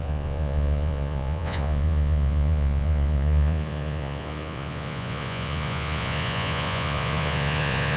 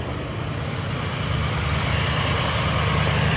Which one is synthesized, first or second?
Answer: first